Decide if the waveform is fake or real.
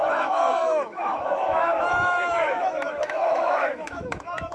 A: fake